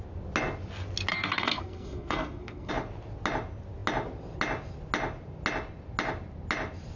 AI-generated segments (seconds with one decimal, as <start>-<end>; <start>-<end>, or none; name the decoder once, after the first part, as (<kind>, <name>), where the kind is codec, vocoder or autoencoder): 1.1-2.7 (codec, SNAC)